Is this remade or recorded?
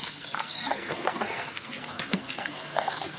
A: remade